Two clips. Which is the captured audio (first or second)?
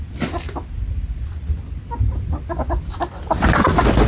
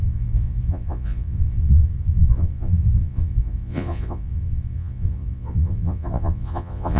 first